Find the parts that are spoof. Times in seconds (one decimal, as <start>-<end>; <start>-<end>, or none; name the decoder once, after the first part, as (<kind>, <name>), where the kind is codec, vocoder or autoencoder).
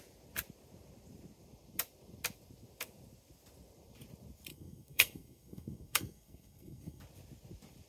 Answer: 4.5-7.0 (codec, SNAC)